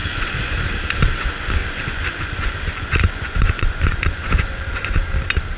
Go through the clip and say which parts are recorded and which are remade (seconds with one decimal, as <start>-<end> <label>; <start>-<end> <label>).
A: 0.0-0.7 remade; 0.7-1.6 recorded; 1.6-5.0 remade; 5.0-5.6 recorded